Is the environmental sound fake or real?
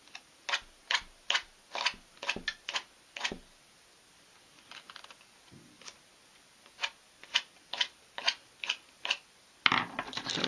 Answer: real